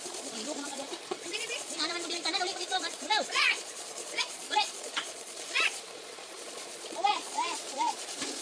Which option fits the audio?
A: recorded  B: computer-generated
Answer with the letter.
B